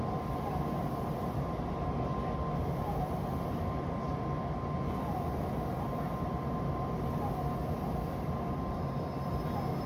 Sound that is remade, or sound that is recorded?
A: recorded